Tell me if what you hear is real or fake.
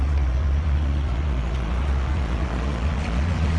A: fake